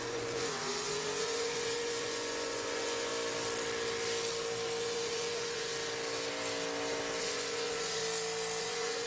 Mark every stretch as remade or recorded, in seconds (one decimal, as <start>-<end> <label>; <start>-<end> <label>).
0.0-3.1 remade; 3.1-4.8 recorded; 4.8-5.7 remade; 5.7-7.2 recorded; 7.2-8.0 remade; 8.0-8.6 recorded; 8.6-9.1 remade